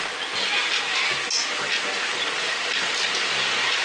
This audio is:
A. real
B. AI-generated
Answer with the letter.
A